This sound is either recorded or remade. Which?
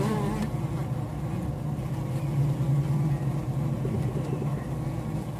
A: recorded